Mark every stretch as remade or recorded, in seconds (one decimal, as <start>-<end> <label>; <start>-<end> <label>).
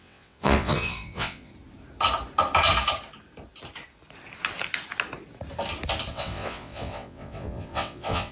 0.0-1.5 remade; 1.5-6.1 recorded; 6.1-8.3 remade